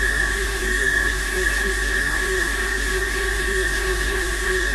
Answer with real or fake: fake